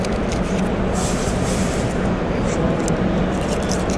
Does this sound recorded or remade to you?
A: recorded